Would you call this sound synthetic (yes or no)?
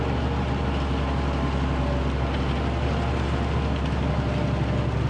no